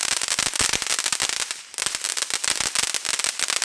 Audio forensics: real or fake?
real